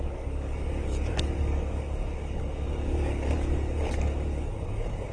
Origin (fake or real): fake